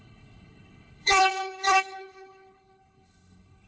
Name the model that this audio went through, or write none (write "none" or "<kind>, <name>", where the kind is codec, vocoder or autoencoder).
codec, HILCodec